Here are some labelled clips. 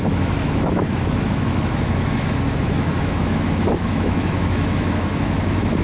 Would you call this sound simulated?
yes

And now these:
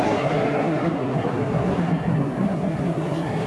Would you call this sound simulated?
yes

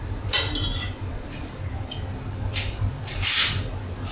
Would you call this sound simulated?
no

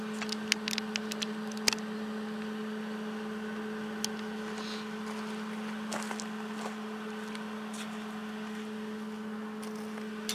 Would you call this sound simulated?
no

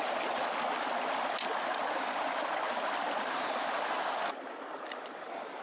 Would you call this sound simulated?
no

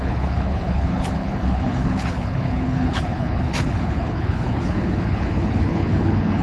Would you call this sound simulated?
yes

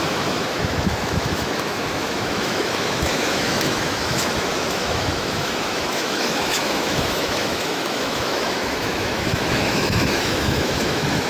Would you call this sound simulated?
yes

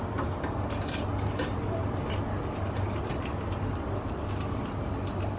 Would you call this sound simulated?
yes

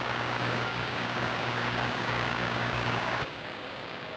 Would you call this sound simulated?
yes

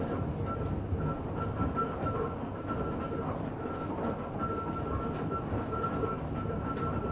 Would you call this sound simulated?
no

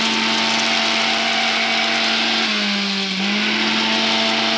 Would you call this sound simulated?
no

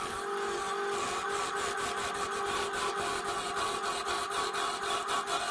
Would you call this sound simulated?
no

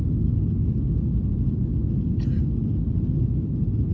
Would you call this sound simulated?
no